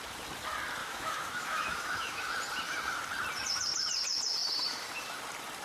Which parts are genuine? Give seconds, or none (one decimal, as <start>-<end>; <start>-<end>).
0.0-0.8; 2.3-5.6